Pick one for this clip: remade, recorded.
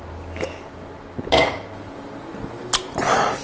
recorded